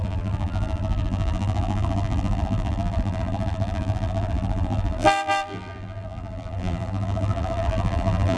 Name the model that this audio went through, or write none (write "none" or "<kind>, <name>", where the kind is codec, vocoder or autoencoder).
vocoder, BigVGAN v2